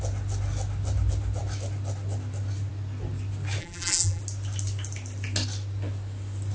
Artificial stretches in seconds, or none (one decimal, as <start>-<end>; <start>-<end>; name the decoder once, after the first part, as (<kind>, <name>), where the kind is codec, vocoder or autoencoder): 3.6-4.2 (vocoder, BigVGAN v2)